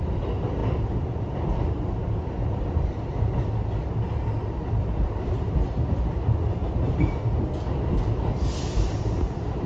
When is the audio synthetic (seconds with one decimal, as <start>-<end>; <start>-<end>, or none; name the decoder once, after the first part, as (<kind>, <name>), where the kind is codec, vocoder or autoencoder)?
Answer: none